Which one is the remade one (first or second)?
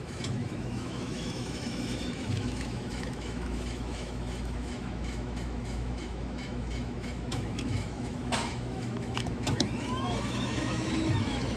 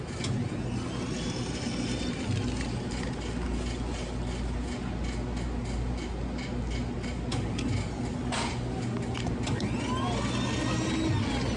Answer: first